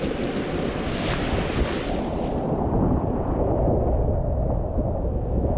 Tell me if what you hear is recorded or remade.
recorded